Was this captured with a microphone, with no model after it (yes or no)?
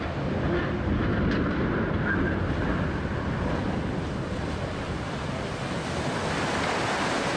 yes